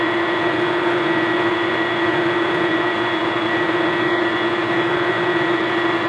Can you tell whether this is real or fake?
fake